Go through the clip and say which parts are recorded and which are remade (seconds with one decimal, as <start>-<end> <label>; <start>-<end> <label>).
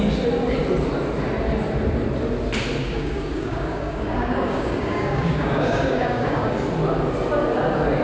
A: 0.0-2.8 recorded; 2.8-6.5 remade; 6.5-8.0 recorded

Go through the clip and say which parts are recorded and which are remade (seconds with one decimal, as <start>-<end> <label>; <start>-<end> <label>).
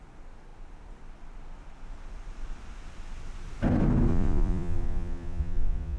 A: 0.0-4.1 recorded; 4.1-6.0 remade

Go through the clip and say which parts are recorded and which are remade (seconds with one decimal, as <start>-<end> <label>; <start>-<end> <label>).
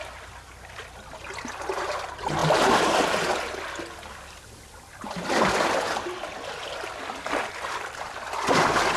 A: 0.0-2.4 recorded; 2.4-6.9 remade; 6.9-9.0 recorded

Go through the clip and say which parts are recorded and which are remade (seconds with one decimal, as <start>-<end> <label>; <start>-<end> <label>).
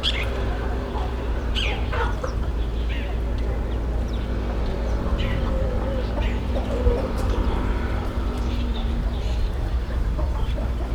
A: 0.0-2.7 remade; 2.7-6.4 recorded; 6.4-10.9 remade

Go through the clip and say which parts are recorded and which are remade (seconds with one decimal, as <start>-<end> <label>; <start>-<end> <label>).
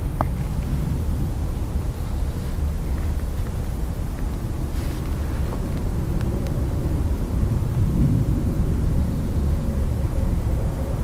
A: 0.0-11.0 recorded